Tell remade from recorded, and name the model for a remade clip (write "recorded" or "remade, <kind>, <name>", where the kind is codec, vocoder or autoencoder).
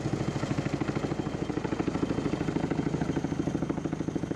recorded